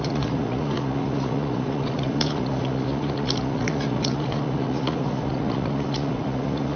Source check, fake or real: fake